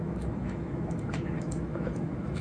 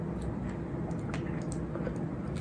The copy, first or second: first